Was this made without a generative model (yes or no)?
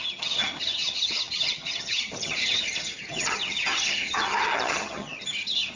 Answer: no